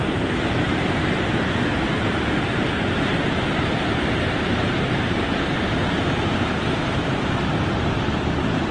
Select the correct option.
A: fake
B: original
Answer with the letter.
A